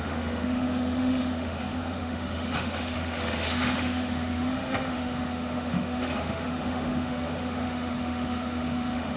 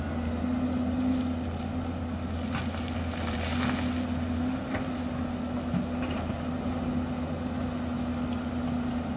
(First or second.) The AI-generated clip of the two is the first